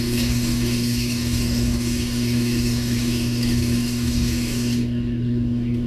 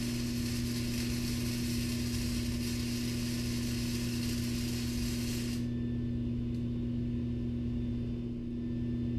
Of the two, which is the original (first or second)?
second